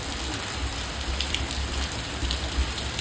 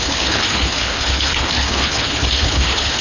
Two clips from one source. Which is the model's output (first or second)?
second